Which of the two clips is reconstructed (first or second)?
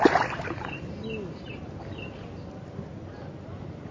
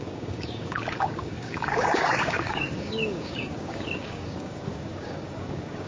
second